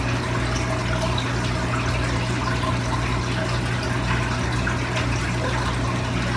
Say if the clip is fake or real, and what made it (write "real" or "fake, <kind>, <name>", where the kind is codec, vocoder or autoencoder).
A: real